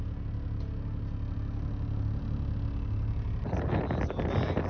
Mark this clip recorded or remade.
recorded